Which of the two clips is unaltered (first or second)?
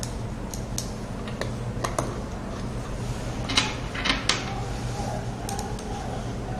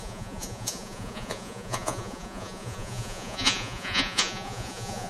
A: first